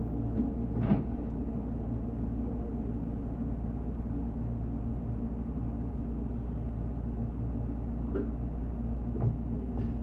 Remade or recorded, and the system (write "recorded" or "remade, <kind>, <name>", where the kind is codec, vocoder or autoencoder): recorded